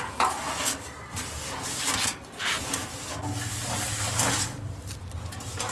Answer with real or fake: real